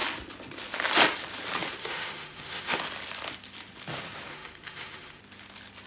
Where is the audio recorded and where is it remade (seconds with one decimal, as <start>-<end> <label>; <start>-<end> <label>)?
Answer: 0.0-1.8 recorded; 1.8-2.8 remade; 2.8-4.3 recorded; 4.3-5.2 remade; 5.2-5.9 recorded